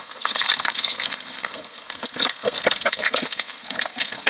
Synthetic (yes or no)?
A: yes